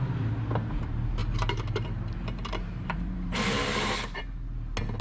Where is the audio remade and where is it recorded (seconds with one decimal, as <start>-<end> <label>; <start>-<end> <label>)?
0.0-1.2 recorded; 1.2-4.2 remade; 4.2-5.0 recorded